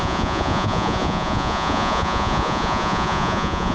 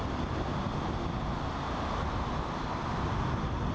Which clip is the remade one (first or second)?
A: first